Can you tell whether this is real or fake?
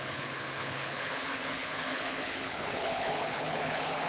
fake